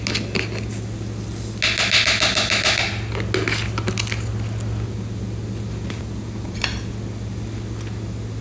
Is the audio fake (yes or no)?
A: no